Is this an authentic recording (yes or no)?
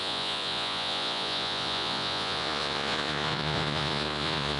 no